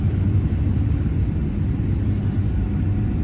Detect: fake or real real